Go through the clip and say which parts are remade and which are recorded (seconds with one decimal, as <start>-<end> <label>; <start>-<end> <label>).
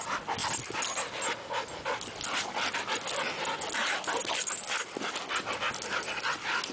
0.0-6.7 recorded